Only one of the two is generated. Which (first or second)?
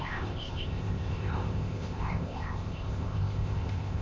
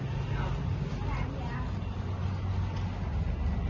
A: first